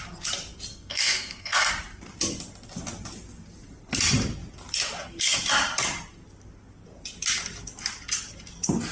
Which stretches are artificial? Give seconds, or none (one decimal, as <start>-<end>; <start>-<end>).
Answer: 0.7-1.7